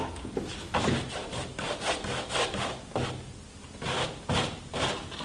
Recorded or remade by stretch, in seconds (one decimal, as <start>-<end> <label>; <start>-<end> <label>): 0.0-5.2 recorded